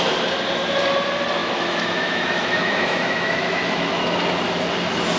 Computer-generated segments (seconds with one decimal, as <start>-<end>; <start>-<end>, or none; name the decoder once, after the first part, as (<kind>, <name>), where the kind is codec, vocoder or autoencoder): 1.4-4.0 (autoencoder, DAC-VAE)